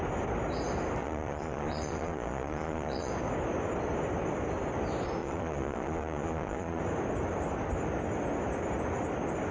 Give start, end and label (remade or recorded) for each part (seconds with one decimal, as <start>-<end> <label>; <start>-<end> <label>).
0.0-1.0 recorded; 1.0-3.1 remade; 3.1-5.2 recorded; 5.2-6.8 remade; 6.8-9.5 recorded